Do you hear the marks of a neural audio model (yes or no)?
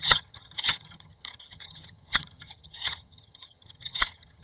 yes